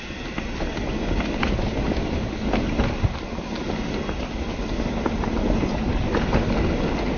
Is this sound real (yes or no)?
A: yes